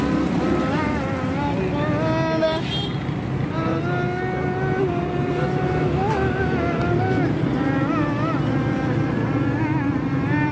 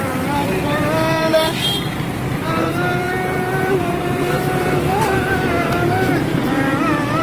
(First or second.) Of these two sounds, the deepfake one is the second